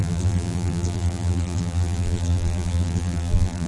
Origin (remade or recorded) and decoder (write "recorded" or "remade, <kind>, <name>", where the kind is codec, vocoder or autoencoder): remade, vocoder, BigVGAN v2